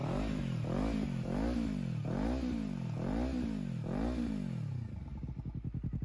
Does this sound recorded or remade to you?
recorded